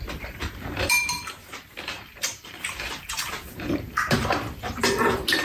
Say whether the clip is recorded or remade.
remade